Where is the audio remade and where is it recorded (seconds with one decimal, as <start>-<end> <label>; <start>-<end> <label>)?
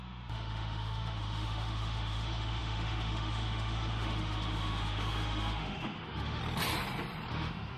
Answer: 0.0-6.4 remade; 6.4-7.3 recorded; 7.3-7.8 remade